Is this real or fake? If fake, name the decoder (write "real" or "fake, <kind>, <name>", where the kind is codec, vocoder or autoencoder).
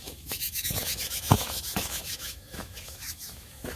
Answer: fake, autoencoder, DAC-VAE